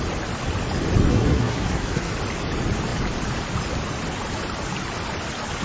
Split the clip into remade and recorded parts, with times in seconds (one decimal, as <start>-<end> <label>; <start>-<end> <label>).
0.0-1.1 recorded; 1.1-2.1 remade; 2.1-5.6 recorded